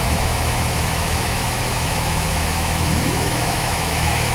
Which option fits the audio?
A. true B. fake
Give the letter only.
B